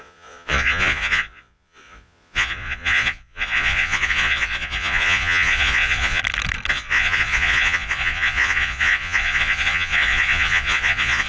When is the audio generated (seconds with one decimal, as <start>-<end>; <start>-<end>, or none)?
0.0-6.2; 6.7-11.3